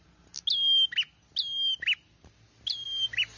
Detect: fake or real real